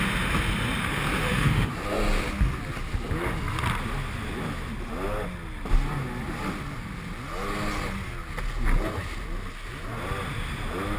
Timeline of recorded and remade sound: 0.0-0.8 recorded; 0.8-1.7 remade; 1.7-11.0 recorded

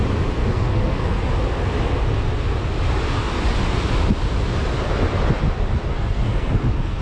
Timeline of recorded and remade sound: 0.0-0.4 recorded; 0.4-1.3 remade; 1.3-5.9 recorded; 5.9-7.0 remade

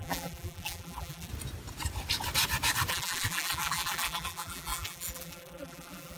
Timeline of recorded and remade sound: 0.0-1.3 remade; 1.3-2.9 recorded; 2.9-6.2 remade